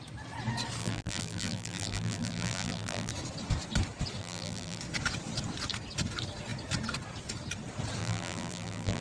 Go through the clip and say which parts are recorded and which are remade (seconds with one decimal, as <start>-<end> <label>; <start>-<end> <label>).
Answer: 0.0-0.8 recorded; 0.8-3.1 remade; 3.1-4.2 recorded; 4.2-4.8 remade; 4.8-8.0 recorded; 8.0-9.0 remade